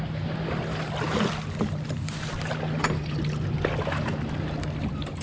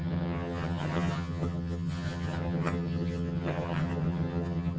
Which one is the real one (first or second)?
first